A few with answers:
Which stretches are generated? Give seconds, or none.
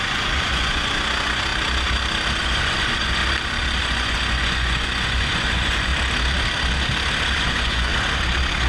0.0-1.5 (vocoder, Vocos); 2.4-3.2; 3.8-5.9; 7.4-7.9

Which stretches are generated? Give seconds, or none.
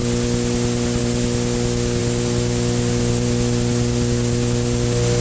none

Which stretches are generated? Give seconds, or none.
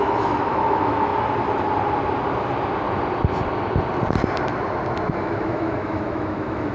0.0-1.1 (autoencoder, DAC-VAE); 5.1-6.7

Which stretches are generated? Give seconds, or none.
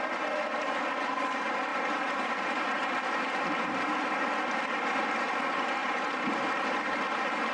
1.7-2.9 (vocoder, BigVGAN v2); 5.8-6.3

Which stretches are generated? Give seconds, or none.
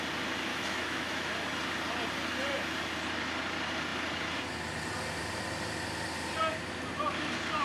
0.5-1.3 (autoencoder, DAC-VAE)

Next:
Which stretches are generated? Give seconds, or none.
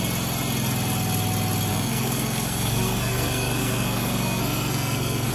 1.7-5.3 (codec, SNAC)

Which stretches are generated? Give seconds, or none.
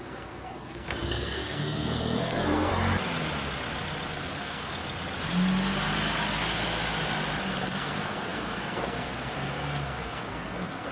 0.0-2.7 (codec, SNAC); 4.1-4.8; 7.5-10.9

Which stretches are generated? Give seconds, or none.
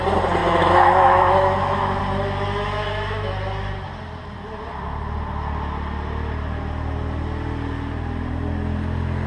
0.4-2.0 (autoencoder, DAC-VAE); 2.8-3.3